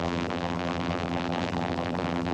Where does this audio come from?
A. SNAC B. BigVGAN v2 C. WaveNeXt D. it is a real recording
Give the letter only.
B